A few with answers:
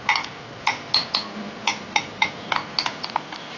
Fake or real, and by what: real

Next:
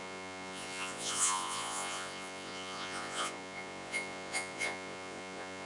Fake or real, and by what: fake, vocoder, Vocos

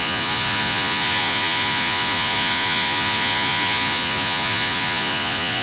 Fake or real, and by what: fake, vocoder, Vocos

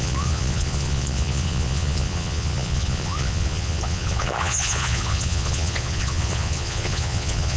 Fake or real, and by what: fake, vocoder, Vocos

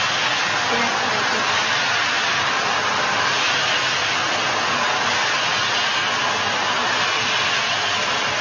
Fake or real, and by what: real